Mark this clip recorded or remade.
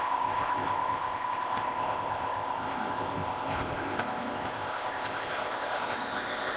remade